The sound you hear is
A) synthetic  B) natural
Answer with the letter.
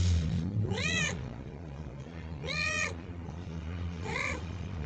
A